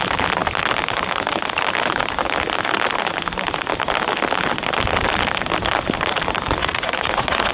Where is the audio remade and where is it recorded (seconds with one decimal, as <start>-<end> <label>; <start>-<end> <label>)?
0.0-6.6 recorded; 6.6-7.5 remade